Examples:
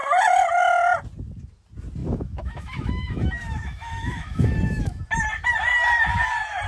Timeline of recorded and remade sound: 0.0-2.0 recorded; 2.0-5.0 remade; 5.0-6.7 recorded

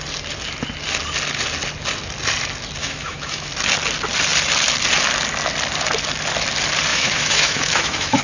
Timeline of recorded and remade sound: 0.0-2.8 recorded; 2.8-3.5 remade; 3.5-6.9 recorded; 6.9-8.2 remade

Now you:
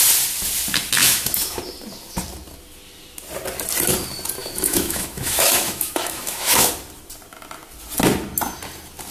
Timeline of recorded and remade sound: 0.0-1.0 recorded; 1.0-1.6 remade; 1.6-4.4 recorded; 4.4-6.7 remade; 6.7-9.1 recorded

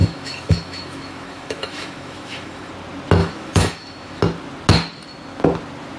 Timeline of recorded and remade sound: 0.0-2.7 remade; 2.7-3.2 recorded; 3.2-4.2 remade; 4.2-6.0 recorded